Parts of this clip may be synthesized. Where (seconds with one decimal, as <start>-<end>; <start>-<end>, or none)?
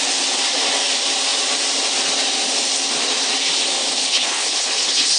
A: 4.0-5.2